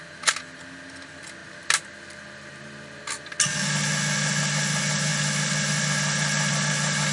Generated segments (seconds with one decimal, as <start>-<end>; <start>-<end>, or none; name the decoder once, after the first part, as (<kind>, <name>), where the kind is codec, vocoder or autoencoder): none